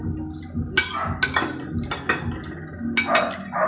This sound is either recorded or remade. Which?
recorded